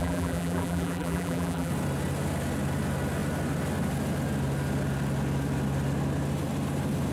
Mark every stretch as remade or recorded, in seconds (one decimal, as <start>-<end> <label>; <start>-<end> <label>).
0.0-1.7 remade; 1.7-7.1 recorded